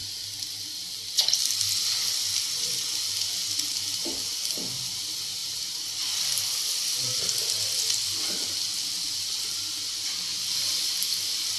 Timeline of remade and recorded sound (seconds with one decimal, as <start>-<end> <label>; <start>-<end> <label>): 0.0-5.4 recorded; 5.4-8.3 remade; 8.3-11.6 recorded